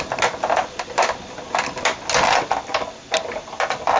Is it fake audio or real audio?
real